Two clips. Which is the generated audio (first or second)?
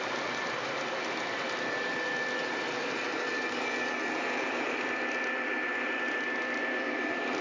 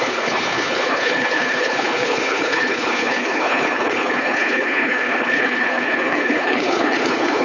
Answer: second